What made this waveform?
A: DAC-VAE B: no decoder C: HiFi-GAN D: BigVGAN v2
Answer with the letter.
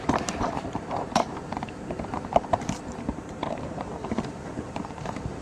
D